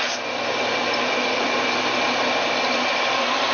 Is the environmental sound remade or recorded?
recorded